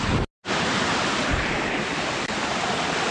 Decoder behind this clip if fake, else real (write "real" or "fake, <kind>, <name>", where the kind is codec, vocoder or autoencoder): real